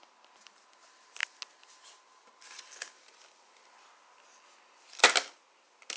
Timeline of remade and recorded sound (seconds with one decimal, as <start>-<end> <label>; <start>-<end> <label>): 0.0-6.0 recorded